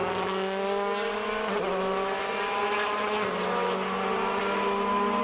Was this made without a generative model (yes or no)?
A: yes